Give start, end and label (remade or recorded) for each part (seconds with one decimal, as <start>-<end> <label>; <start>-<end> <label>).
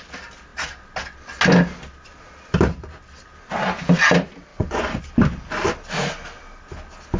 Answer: 0.0-4.5 recorded; 4.5-5.0 remade; 5.0-7.2 recorded